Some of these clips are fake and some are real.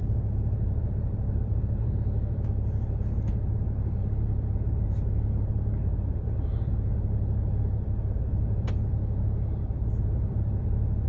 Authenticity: fake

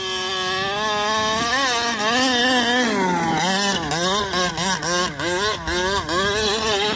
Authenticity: real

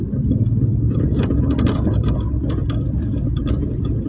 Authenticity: real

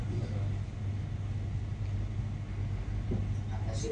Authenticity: real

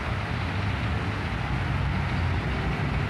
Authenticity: real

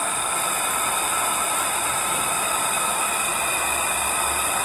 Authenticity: real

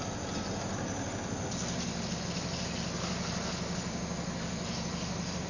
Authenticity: real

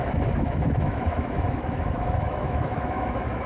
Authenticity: fake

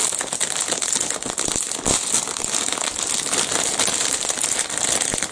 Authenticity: real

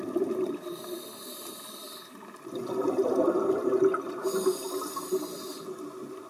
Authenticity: real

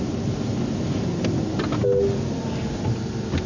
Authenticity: real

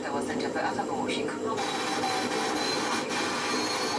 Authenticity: real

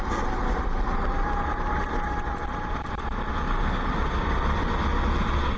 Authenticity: real